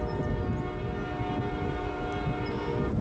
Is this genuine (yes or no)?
yes